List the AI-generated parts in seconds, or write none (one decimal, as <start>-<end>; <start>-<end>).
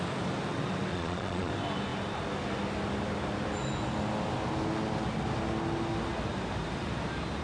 0.9-1.5